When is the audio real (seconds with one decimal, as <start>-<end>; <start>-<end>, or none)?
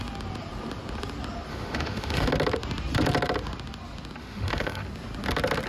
0.0-1.5; 2.3-4.2; 4.8-5.7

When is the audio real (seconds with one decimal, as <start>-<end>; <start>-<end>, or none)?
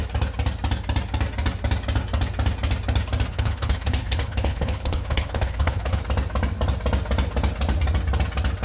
0.0-3.3; 6.0-8.6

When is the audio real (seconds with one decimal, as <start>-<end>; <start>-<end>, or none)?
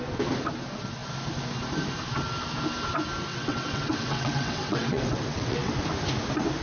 0.0-3.3; 5.7-6.6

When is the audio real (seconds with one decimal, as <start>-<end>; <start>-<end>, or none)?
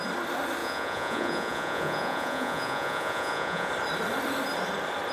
0.0-0.6; 3.7-5.1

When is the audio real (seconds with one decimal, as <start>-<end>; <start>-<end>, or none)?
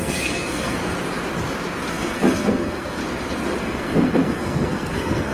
0.8-1.9; 3.0-3.6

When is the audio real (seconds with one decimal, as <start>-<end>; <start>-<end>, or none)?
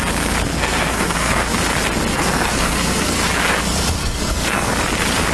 0.0-0.5; 1.4-2.1; 3.3-4.0; 4.7-5.3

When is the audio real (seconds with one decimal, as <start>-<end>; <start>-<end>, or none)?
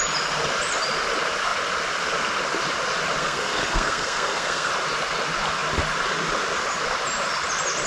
0.0-3.2; 4.7-7.9